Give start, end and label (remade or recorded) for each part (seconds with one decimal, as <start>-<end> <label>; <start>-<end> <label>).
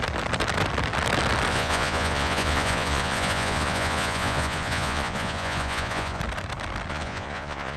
0.0-1.5 recorded; 1.5-6.2 remade; 6.2-6.9 recorded; 6.9-7.8 remade